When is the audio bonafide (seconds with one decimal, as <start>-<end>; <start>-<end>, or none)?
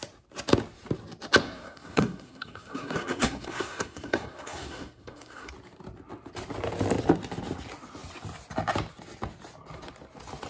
0.0-1.4; 5.5-10.5